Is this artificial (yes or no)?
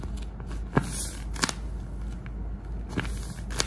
no